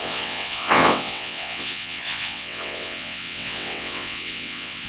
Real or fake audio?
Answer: fake